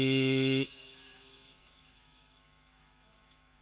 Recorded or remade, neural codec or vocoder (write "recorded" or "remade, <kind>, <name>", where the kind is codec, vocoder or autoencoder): remade, autoencoder, DAC-VAE